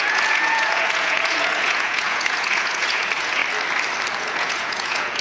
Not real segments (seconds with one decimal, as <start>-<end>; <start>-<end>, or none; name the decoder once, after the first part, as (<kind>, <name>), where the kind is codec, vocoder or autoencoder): 0.0-3.4 (vocoder, Vocos); 4.2-5.2